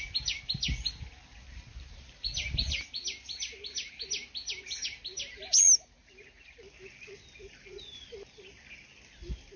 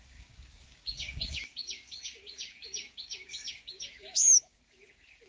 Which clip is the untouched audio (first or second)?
first